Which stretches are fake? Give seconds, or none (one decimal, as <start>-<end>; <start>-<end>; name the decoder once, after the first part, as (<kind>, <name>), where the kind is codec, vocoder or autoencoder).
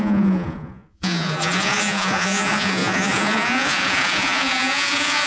0.0-5.3 (vocoder, Vocos)